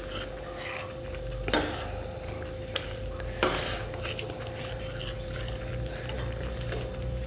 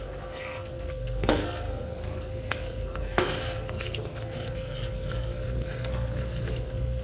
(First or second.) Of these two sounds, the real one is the first